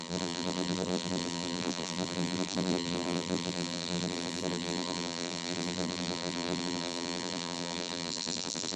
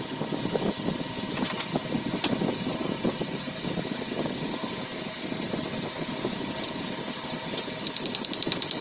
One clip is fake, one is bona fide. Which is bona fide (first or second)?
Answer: second